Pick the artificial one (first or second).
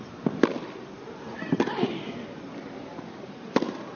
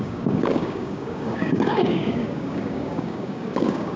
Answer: second